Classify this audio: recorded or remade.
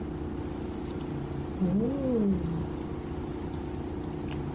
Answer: recorded